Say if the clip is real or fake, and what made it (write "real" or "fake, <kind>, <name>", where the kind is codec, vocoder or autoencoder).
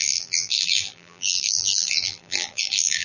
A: fake, vocoder, BigVGAN v2